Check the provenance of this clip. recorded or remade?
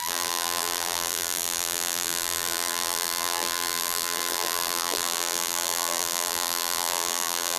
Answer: remade